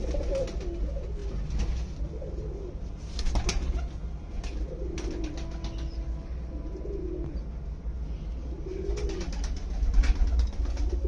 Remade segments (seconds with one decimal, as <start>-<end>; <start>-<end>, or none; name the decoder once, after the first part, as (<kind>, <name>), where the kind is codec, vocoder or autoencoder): none